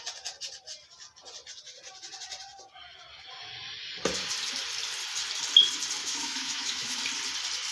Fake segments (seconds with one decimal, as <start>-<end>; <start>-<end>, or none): 6.0-7.0

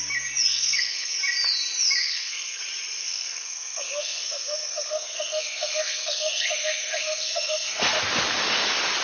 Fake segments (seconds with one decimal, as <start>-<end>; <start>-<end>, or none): 0.5-1.2; 2.0-2.6; 3.0-8.0